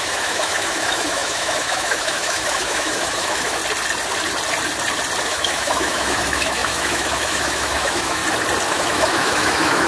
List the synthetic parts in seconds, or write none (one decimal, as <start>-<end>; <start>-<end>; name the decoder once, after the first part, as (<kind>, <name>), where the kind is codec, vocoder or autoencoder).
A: 0.0-3.6 (autoencoder, DAC-VAE); 5.2-8.2; 8.7-9.9